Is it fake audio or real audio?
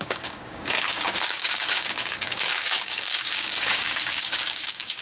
fake